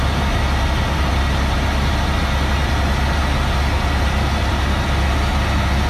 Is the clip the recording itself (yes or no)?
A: yes